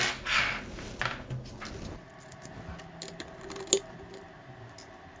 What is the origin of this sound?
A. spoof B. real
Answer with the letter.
B